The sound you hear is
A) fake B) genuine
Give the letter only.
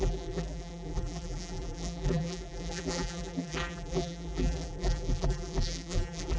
A